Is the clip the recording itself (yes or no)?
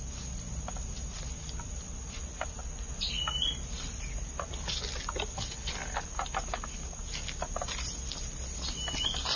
yes